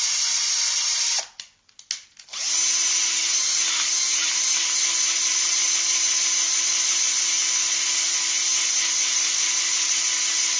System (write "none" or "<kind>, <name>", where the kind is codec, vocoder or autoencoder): none